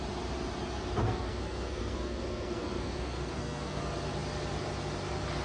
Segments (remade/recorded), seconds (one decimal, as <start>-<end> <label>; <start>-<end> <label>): 0.0-1.0 recorded; 1.0-3.8 remade; 3.8-5.4 recorded